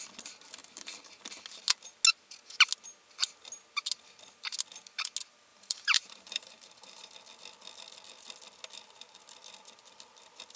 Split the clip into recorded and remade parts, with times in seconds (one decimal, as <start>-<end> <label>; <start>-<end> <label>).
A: 0.0-0.6 recorded; 0.6-1.2 remade; 1.2-5.5 recorded; 5.5-7.1 remade; 7.1-10.6 recorded